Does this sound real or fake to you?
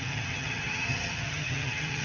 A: fake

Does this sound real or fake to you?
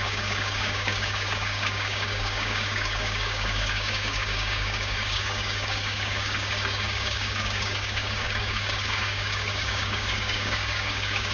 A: fake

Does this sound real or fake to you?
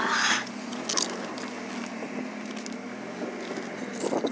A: real